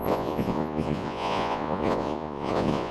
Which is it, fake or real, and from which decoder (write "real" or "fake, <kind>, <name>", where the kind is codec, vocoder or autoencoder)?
fake, vocoder, Vocos